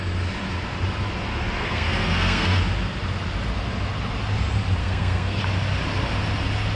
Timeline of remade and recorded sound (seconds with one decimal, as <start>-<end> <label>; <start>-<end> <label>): 0.0-1.6 recorded; 1.6-2.6 remade; 2.6-4.8 recorded; 4.8-5.4 remade; 5.4-6.8 recorded